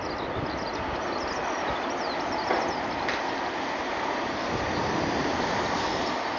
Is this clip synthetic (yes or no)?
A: no